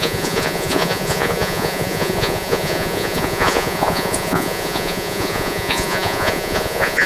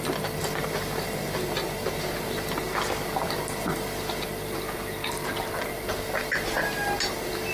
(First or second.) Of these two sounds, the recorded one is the second